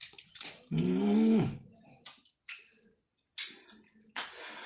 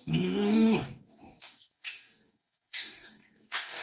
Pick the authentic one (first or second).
first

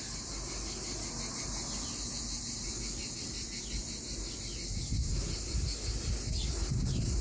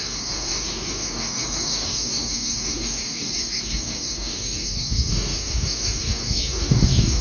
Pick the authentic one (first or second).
first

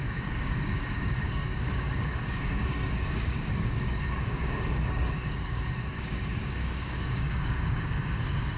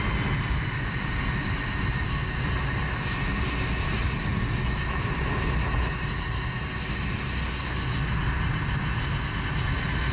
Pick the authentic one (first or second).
second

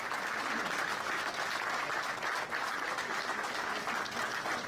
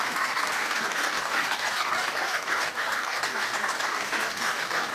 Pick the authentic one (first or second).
first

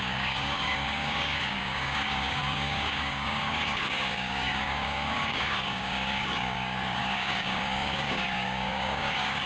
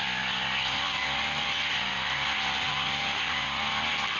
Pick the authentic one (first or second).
second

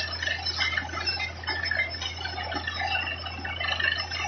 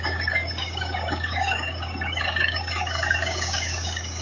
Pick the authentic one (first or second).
first